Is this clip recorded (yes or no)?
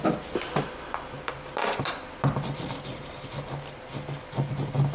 yes